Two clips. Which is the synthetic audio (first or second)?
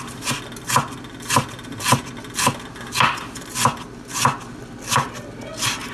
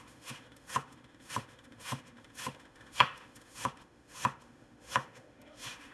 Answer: second